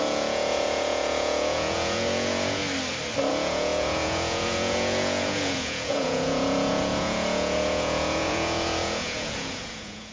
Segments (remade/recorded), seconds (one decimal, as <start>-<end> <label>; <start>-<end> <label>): 0.0-2.6 remade; 2.6-3.3 recorded; 3.3-10.1 remade